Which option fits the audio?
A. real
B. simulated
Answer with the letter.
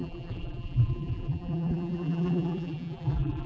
B